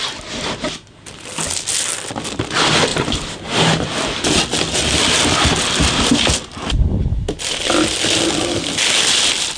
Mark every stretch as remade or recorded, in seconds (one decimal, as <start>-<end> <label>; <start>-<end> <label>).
0.0-2.9 recorded; 2.9-4.4 remade; 4.4-9.6 recorded